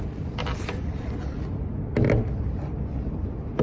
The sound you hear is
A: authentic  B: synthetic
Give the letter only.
A